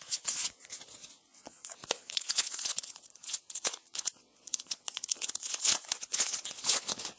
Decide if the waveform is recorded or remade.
remade